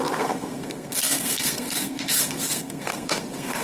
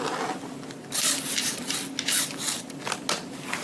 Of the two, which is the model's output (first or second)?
first